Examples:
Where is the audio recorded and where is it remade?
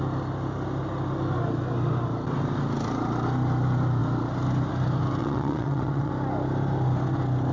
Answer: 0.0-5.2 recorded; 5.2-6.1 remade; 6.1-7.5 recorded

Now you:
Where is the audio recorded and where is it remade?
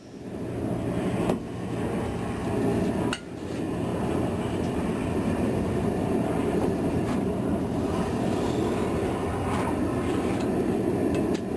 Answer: 0.0-3.9 recorded; 3.9-7.8 remade; 7.8-11.6 recorded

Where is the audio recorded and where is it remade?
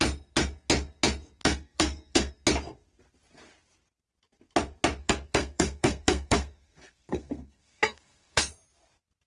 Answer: 0.0-1.4 recorded; 1.4-2.3 remade; 2.3-5.0 recorded; 5.0-8.5 remade; 8.5-9.3 recorded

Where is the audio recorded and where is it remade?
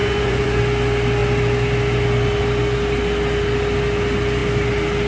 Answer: 0.0-0.6 remade; 0.6-5.1 recorded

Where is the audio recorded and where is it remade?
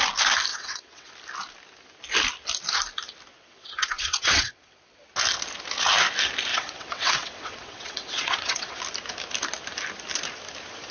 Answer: 0.0-0.5 recorded; 0.5-1.1 remade; 1.1-3.3 recorded; 3.3-5.0 remade; 5.0-6.5 recorded; 6.5-8.8 remade; 8.8-10.9 recorded